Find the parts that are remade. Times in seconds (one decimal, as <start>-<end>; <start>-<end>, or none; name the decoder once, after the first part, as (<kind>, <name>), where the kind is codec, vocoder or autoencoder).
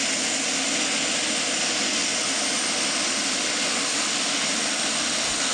none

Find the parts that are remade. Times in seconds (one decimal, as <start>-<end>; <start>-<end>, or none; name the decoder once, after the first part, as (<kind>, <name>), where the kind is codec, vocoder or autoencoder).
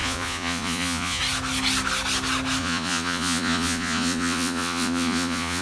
0.0-1.2 (vocoder, Vocos); 2.6-5.6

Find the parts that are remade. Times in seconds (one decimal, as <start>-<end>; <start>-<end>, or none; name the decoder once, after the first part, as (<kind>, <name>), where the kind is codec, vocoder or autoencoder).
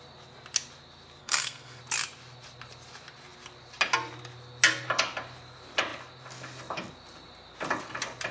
1.2-1.8 (codec, SNAC)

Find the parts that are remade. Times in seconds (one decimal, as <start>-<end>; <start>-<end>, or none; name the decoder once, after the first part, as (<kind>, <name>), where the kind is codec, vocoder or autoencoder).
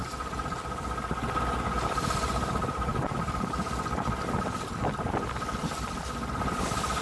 0.0-1.4 (vocoder, BigVGAN v2); 2.9-6.3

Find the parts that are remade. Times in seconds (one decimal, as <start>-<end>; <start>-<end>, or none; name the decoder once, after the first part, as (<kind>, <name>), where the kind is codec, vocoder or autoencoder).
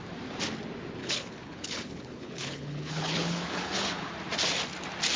1.0-4.1 (codec, HILCodec)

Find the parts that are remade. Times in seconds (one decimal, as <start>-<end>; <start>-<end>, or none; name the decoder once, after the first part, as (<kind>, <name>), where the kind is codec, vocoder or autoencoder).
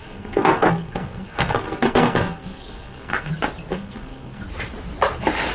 0.0-3.3 (codec, SNAC); 3.7-4.4